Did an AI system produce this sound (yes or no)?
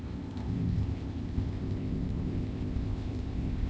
yes